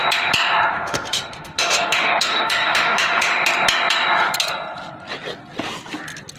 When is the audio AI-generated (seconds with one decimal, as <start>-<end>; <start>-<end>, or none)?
0.7-3.3